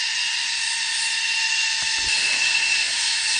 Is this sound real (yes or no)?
yes